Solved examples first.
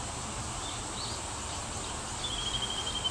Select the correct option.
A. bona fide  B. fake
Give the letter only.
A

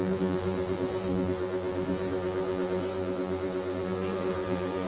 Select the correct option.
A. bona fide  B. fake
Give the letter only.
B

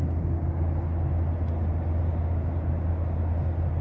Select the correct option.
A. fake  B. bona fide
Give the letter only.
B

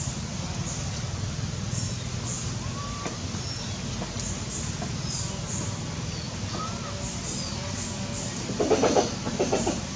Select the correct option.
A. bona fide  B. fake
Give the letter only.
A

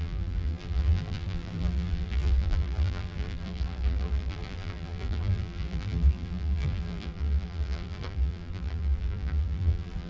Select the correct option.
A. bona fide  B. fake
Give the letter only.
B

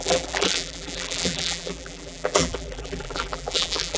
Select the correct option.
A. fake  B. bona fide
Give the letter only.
A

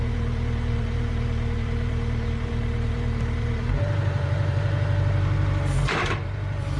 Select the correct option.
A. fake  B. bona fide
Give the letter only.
A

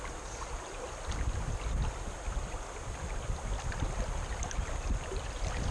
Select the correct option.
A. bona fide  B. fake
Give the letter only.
A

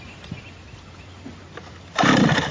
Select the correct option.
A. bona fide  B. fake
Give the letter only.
A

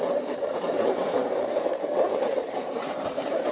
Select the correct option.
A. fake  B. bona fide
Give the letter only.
A